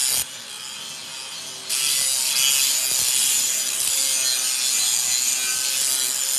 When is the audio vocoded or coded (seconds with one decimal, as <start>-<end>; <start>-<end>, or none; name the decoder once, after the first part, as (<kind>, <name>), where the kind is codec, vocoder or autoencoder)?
3.2-4.0 (vocoder, BigVGAN v2)